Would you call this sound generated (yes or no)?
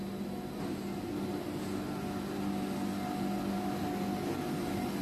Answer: no